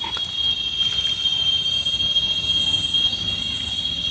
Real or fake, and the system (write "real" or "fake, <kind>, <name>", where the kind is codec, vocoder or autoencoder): real